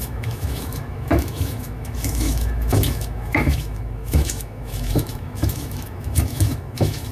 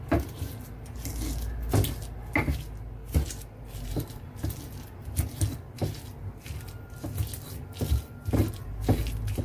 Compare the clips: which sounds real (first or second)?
second